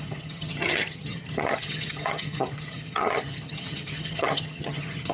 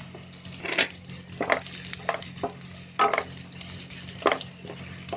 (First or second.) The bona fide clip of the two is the second